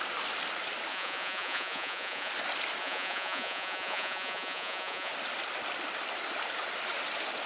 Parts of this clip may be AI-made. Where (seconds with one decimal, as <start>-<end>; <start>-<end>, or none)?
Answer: 0.9-2.3; 2.8-5.1